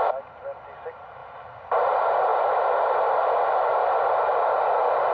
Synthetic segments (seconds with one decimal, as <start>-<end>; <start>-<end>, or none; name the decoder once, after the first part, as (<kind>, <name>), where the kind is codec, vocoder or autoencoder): 1.2-1.8 (vocoder, BigVGAN v2); 2.3-3.2